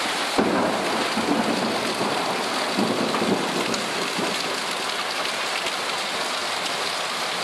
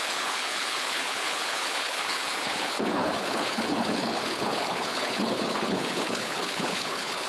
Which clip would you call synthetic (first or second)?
second